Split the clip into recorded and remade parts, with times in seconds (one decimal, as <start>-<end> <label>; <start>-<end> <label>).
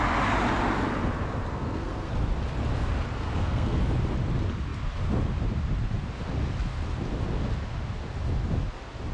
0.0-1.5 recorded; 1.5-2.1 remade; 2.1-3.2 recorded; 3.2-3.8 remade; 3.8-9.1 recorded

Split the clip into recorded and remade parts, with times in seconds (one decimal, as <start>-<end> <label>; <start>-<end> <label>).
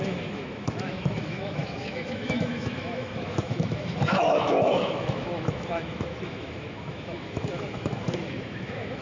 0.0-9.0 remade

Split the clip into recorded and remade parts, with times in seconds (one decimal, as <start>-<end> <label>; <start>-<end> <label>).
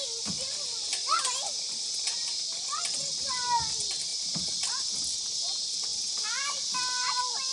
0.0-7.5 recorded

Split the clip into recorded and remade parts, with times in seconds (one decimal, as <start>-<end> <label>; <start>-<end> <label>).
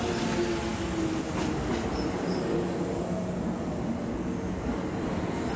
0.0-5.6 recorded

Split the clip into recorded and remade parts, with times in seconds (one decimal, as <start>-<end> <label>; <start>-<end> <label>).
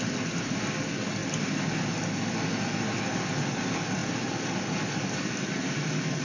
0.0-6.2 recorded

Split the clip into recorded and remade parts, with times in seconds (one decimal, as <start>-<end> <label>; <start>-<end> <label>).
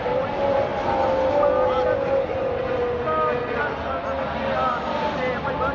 0.0-5.7 recorded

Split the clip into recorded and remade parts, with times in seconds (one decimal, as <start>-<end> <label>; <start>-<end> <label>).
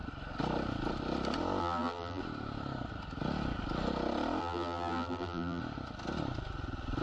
0.0-1.6 recorded; 1.6-2.2 remade; 2.2-4.4 recorded; 4.4-5.6 remade; 5.6-7.0 recorded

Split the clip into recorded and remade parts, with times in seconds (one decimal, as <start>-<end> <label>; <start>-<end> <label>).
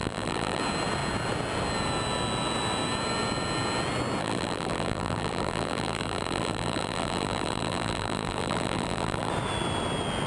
0.0-0.6 remade; 0.6-4.2 recorded; 4.2-9.3 remade; 9.3-10.3 recorded